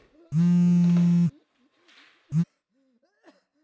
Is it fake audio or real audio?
real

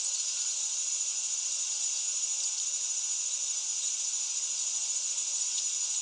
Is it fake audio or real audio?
real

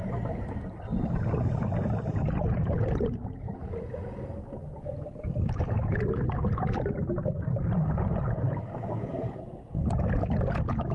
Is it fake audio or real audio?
real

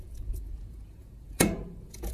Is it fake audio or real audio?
fake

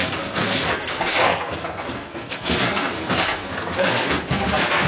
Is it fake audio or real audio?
fake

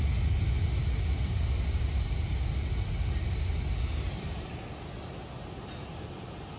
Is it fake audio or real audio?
real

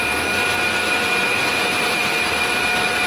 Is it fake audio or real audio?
real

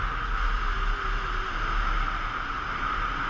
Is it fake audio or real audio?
real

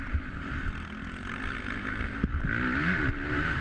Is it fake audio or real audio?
real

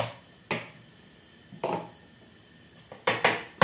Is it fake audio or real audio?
real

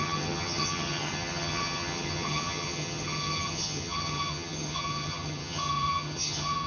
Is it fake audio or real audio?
fake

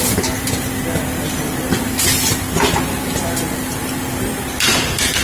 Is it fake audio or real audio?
real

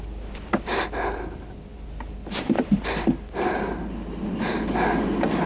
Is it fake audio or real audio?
real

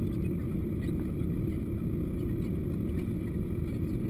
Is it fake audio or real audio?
real